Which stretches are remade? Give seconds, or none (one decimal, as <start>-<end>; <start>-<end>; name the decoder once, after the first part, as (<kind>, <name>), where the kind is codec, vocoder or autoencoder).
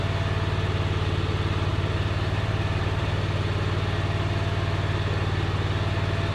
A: 1.7-3.1 (vocoder, BigVGAN v2)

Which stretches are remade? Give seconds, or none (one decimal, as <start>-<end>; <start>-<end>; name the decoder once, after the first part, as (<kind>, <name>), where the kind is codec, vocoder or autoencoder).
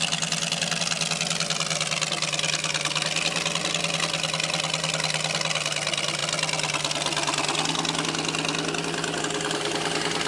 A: none